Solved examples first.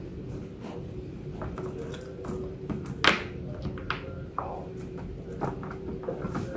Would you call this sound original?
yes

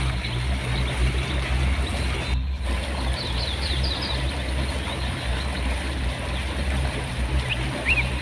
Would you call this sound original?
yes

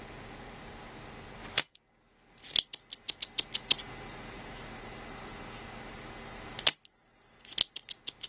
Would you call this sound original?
yes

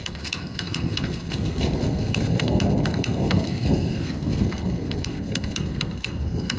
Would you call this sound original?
no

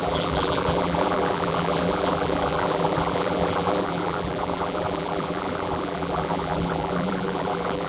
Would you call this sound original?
no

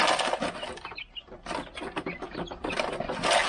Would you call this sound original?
yes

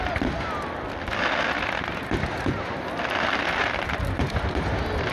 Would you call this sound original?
no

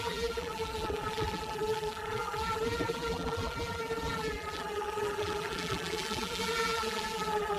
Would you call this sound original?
no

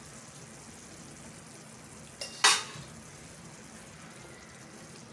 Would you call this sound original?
yes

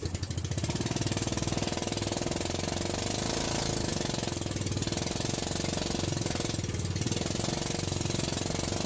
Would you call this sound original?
yes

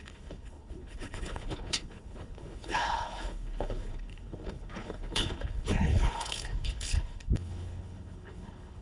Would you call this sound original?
no